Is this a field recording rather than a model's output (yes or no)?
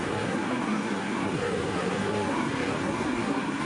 no